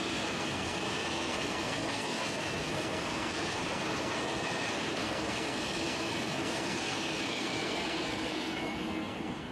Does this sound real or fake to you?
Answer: fake